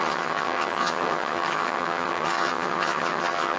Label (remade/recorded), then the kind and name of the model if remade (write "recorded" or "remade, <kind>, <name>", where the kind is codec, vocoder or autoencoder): remade, vocoder, HiFi-GAN